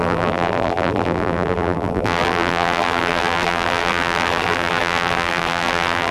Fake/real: fake